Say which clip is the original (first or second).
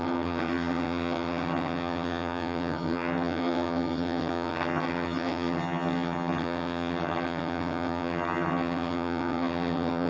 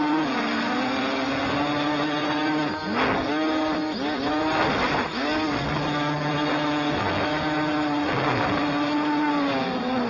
second